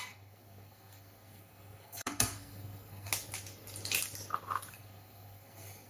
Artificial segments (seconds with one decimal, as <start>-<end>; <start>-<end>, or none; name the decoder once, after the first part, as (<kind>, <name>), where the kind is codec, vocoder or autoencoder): 0.0-3.1 (codec, SNAC); 4.7-5.9